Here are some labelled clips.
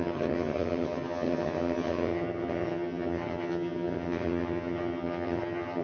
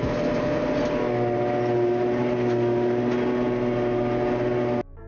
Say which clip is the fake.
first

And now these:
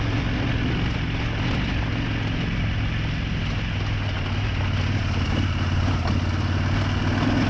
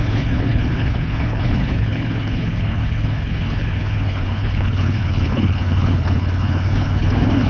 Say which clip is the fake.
second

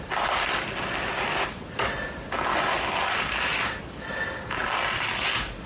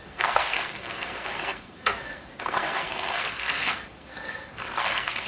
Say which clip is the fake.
second